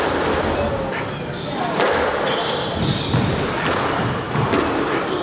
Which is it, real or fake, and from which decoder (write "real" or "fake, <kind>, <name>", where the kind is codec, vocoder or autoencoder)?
real